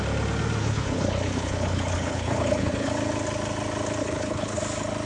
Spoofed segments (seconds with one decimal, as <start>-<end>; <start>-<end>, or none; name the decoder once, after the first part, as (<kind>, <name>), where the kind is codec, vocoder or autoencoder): 0.6-2.9 (codec, HILCodec); 4.0-4.6